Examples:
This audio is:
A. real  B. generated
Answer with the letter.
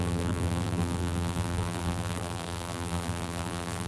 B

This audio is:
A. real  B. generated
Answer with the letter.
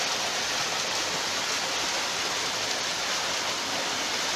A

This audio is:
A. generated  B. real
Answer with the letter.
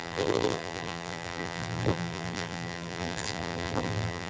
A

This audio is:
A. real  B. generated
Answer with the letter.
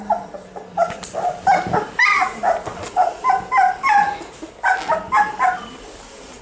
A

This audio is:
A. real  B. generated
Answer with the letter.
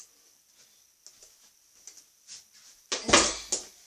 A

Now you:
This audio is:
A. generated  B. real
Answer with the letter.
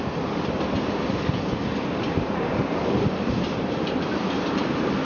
A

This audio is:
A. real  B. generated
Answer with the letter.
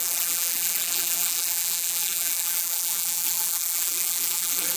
B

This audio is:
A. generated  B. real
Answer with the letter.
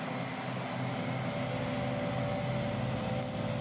B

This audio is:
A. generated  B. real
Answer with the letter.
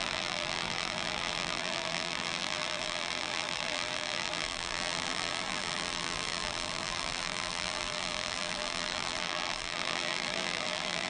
A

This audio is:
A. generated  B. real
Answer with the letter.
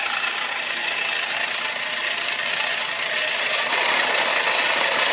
B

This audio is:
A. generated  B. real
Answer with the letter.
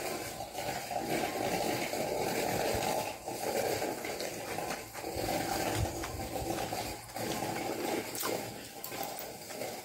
B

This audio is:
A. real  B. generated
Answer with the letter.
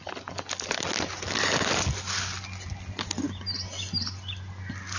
A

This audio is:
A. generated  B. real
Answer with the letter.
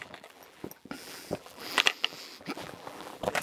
A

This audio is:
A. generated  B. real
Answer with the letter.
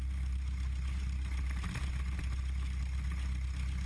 B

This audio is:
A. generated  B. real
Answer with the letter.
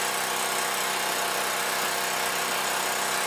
B